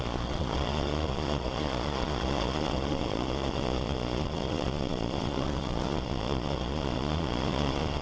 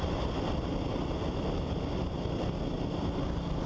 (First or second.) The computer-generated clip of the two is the first